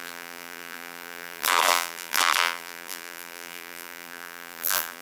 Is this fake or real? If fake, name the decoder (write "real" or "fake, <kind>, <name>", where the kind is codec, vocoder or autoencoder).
fake, vocoder, BigVGAN v2